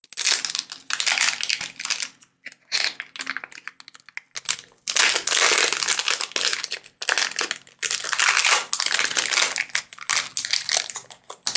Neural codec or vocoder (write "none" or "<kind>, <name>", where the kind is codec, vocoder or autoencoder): none